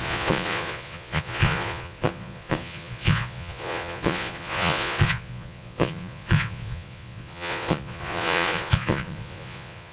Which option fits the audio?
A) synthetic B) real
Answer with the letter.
A